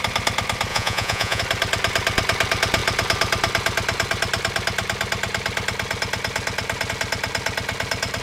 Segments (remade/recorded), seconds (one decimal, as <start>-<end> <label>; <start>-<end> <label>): 0.0-0.7 recorded; 0.7-1.4 remade; 1.4-8.2 recorded